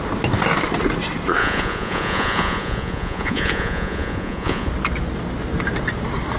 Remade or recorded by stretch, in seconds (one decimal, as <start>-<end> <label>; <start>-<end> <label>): 0.0-1.4 recorded; 1.4-4.7 remade; 4.7-6.4 recorded